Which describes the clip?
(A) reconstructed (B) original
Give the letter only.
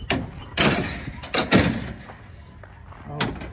B